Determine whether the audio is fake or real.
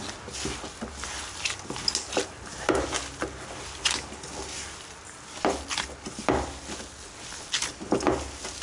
real